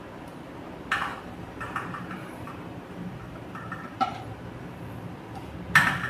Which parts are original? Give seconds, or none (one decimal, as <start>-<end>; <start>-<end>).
0.0-1.1; 4.8-6.1